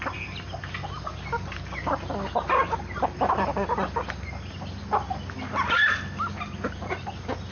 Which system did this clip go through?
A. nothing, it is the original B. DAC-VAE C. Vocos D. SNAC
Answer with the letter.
A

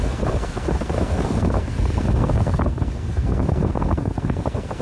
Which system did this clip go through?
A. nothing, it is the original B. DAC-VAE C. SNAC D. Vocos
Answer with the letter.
C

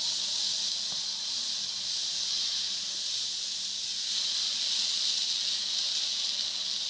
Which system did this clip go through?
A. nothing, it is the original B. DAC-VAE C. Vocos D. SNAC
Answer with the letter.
A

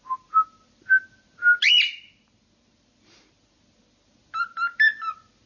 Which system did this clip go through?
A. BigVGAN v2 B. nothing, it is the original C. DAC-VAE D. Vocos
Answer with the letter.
B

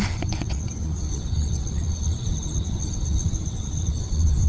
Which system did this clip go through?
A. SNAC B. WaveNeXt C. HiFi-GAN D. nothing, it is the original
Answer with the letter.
B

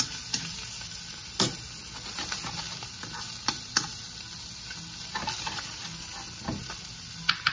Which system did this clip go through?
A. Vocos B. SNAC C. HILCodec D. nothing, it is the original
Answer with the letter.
D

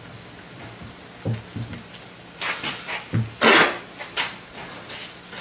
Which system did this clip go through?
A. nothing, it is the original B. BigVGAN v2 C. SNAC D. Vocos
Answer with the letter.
A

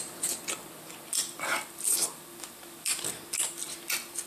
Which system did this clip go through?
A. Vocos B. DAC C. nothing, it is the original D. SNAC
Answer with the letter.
C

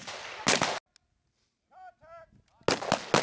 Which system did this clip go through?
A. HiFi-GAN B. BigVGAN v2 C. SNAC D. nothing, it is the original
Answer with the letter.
D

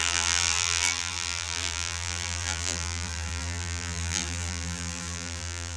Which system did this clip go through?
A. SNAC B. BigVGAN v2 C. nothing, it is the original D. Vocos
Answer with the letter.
B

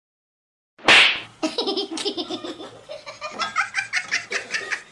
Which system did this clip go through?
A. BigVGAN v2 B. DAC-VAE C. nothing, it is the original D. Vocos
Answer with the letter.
C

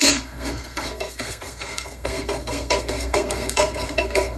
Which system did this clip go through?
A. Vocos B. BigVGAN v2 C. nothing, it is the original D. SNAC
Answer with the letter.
D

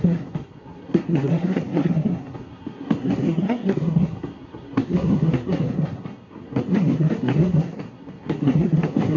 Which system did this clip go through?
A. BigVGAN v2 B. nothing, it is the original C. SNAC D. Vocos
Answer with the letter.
C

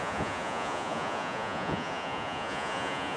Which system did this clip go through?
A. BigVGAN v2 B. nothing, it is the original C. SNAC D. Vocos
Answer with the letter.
D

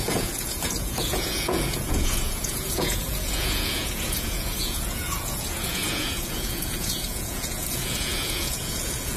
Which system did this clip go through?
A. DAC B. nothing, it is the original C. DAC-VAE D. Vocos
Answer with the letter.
D